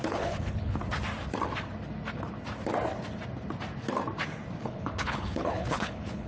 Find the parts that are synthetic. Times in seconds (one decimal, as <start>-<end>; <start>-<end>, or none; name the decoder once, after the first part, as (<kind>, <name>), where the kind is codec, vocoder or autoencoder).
0.0-0.8 (codec, HILCodec); 4.6-6.3

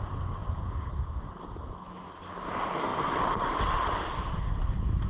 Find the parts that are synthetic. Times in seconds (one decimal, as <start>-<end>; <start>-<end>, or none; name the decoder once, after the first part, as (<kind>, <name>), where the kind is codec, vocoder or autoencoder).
none

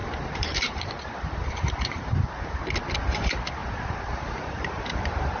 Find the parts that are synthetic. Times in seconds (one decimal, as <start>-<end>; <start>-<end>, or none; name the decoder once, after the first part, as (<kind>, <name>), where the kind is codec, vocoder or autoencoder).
0.0-2.6 (vocoder, BigVGAN v2); 3.6-5.4

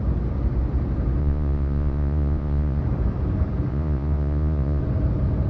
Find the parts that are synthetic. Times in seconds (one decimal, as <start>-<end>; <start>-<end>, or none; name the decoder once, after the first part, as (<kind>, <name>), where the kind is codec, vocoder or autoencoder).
1.2-2.8 (vocoder, Vocos); 3.7-4.8

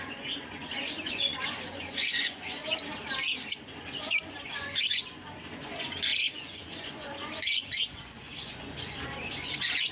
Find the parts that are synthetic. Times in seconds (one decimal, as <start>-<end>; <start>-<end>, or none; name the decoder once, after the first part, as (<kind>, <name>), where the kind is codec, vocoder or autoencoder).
0.0-2.6 (vocoder, Vocos); 3.5-9.9